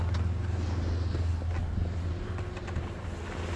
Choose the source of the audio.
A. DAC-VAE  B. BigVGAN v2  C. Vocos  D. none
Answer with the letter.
D